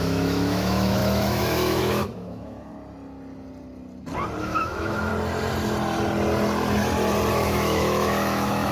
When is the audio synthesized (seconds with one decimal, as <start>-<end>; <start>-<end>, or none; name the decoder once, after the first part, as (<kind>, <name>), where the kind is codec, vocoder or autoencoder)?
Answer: 0.0-2.7 (autoencoder, DAC-VAE); 4.4-5.1; 7.3-8.7